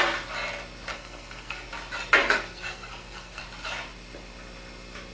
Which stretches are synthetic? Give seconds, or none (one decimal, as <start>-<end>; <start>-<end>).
0.9-1.7; 2.2-3.4